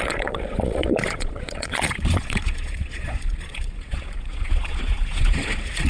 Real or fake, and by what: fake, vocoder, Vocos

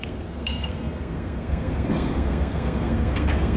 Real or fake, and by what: fake, codec, SNAC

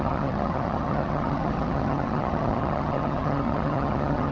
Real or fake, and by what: fake, vocoder, HiFi-GAN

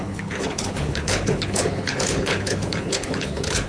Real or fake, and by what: fake, codec, HILCodec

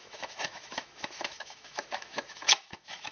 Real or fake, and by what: fake, autoencoder, DAC-VAE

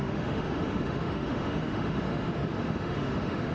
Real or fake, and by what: fake, autoencoder, DAC-VAE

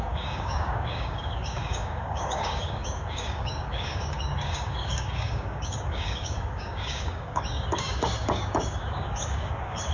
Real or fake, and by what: fake, codec, DAC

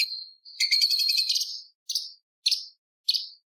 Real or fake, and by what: real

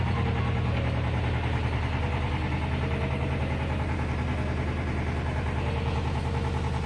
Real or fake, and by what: real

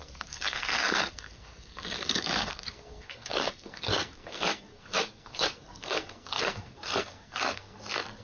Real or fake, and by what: fake, codec, SNAC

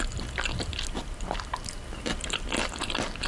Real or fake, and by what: real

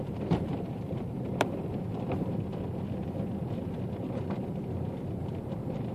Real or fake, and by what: fake, vocoder, BigVGAN v2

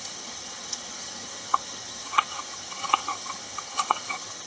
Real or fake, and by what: fake, vocoder, HiFi-GAN